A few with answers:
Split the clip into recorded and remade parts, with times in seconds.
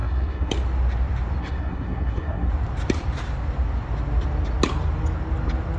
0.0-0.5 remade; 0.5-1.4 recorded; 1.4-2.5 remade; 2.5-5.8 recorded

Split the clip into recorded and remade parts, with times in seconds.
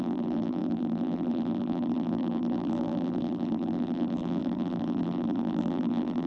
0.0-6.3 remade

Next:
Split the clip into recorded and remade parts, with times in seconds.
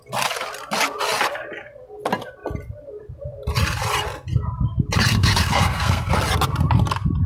0.0-5.1 recorded; 5.1-6.1 remade; 6.1-7.3 recorded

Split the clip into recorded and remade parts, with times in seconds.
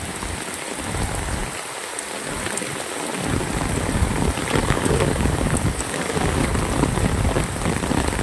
0.0-4.6 recorded; 4.6-6.5 remade; 6.5-8.2 recorded